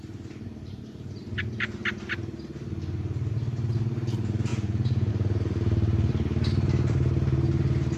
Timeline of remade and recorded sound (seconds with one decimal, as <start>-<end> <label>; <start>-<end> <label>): 0.0-1.8 remade; 1.8-3.3 recorded; 3.3-4.5 remade; 4.5-5.1 recorded; 5.1-8.0 remade